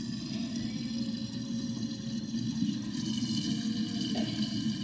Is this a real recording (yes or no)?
yes